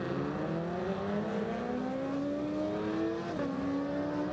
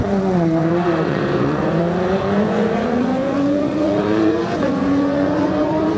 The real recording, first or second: first